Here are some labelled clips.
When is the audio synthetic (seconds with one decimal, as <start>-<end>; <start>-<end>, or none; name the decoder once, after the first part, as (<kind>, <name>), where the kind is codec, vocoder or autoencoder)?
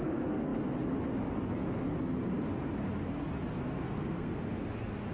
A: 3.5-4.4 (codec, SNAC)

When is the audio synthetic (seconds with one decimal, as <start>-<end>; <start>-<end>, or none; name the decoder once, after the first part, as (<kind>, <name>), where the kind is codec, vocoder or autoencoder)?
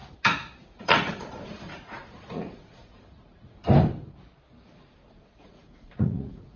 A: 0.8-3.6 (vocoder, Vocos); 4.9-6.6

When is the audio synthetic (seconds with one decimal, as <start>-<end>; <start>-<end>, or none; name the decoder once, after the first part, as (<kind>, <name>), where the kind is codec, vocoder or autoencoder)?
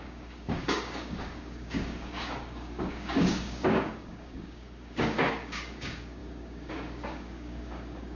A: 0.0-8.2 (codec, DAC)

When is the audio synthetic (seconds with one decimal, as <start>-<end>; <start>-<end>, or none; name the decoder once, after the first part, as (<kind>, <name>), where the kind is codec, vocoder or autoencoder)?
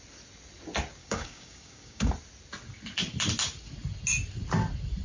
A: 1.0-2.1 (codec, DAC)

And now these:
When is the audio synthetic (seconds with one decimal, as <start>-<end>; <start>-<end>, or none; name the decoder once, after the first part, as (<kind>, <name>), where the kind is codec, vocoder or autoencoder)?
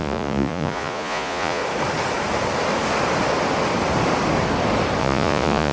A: 0.0-1.6 (vocoder, Vocos); 5.0-5.7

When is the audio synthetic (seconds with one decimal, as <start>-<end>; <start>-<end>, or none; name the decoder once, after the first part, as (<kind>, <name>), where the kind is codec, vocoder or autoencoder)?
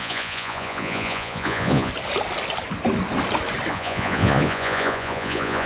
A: 0.0-1.9 (vocoder, Vocos); 3.7-5.7